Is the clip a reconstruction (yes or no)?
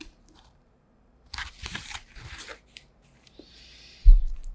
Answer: yes